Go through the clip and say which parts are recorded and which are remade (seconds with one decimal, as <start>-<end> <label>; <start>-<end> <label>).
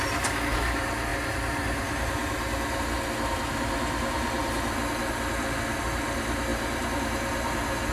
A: 0.0-7.9 remade